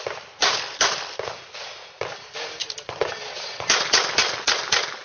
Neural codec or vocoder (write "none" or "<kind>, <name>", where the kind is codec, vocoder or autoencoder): none